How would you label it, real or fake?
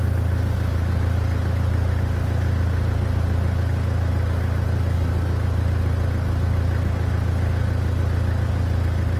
real